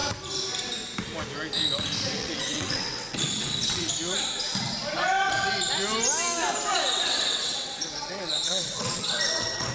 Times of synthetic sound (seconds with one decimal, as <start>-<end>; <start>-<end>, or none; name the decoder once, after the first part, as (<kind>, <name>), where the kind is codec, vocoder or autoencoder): 2.2-3.9 (vocoder, WaveNeXt); 6.7-9.7